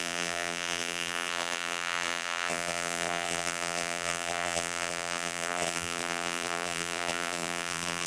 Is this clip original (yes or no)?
no